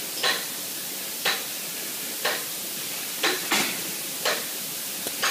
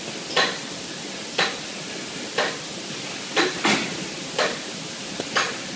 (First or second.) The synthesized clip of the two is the second